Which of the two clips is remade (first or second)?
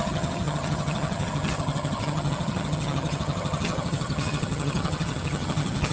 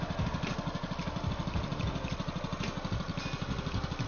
first